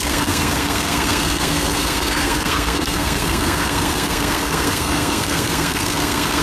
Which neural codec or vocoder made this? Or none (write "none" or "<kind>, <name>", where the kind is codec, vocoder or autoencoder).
codec, SNAC